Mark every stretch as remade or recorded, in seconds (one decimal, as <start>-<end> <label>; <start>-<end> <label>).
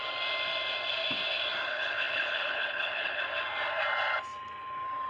0.0-1.7 recorded; 1.7-3.2 remade; 3.2-5.1 recorded